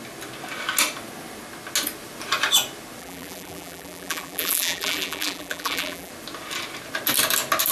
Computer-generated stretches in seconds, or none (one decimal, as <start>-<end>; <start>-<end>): 3.0-6.1